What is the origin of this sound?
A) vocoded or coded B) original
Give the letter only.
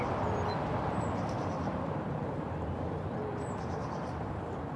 B